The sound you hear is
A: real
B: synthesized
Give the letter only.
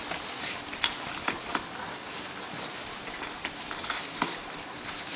A